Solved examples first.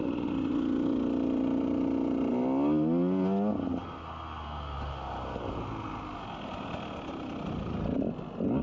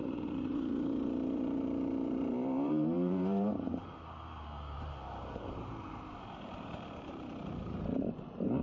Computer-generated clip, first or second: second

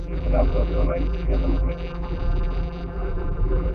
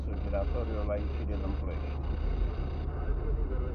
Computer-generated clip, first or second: first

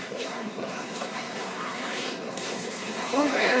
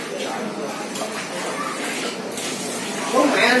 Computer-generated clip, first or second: first